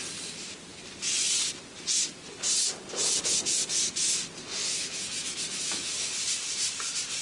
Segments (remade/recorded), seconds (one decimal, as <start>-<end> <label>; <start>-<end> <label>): 0.0-4.6 recorded; 4.6-6.1 remade; 6.1-7.2 recorded